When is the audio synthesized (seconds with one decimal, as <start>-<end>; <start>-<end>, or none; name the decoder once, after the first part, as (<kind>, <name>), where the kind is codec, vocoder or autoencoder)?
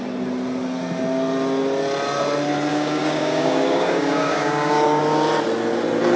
2.7-5.0 (codec, DAC)